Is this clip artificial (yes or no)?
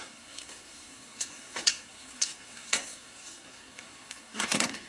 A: yes